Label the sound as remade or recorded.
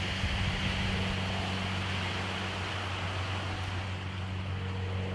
recorded